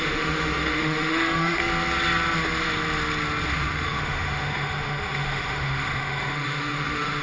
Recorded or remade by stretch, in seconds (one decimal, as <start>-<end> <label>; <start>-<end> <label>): 0.0-1.6 remade; 1.6-3.5 recorded; 3.5-7.2 remade